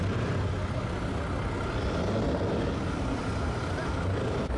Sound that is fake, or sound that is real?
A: real